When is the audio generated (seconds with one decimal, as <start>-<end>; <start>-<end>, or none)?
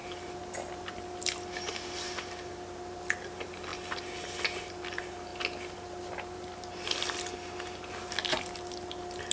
none